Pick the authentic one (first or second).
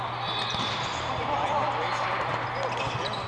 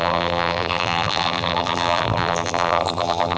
first